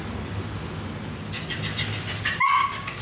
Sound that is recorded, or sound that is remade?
recorded